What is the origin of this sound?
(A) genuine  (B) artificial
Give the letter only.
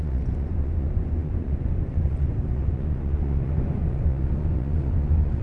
B